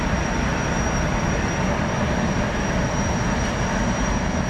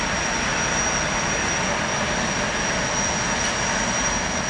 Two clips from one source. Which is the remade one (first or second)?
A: first